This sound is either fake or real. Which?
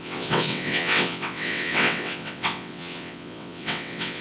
fake